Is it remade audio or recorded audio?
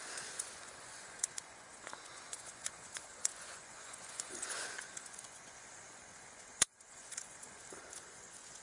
remade